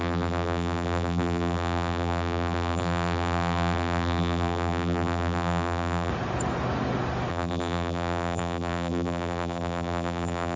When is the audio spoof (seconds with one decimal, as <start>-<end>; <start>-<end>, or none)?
0.0-6.1; 7.3-10.6